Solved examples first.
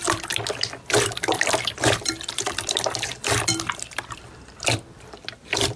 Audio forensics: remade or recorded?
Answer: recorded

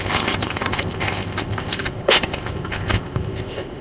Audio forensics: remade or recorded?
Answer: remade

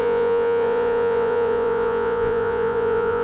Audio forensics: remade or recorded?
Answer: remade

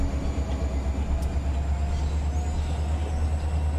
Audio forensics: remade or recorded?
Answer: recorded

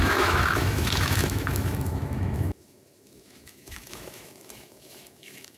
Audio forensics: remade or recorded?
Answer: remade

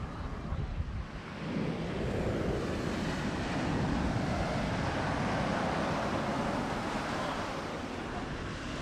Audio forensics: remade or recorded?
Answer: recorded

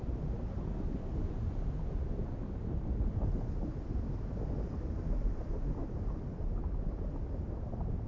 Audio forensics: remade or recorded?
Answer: recorded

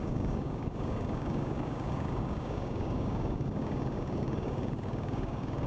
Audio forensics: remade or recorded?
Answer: remade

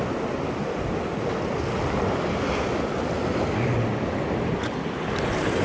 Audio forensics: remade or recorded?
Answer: recorded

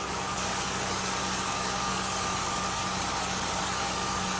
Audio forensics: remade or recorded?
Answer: remade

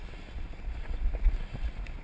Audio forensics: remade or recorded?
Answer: recorded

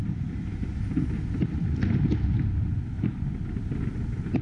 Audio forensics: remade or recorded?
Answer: recorded